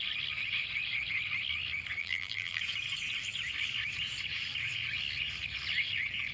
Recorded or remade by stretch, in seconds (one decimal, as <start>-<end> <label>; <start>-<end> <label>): 0.0-2.0 recorded; 2.0-2.6 remade; 2.6-6.3 recorded